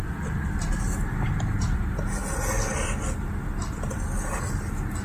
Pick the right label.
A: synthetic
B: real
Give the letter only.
B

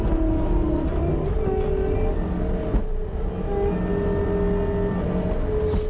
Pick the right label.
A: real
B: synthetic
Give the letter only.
A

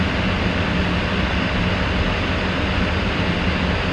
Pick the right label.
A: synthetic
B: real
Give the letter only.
B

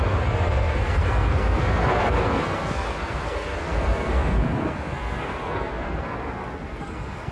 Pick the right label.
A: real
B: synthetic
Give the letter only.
B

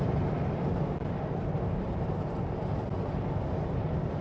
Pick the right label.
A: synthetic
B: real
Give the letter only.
B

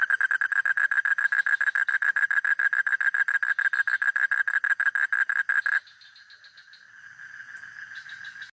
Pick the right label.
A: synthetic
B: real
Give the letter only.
B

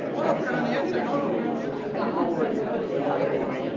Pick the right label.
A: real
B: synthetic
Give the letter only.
A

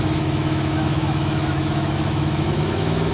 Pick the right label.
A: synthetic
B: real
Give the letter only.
A